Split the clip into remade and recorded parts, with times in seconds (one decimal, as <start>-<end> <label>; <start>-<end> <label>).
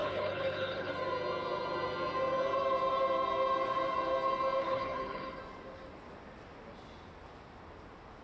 0.0-0.9 remade; 0.9-4.6 recorded; 4.6-5.4 remade; 5.4-8.2 recorded